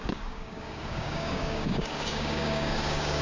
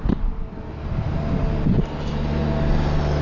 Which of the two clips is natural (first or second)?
second